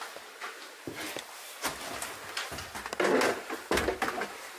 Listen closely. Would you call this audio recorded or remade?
recorded